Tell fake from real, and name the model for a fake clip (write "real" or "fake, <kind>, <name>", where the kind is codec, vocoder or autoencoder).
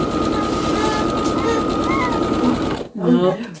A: real